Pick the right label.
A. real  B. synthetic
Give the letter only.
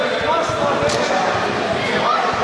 A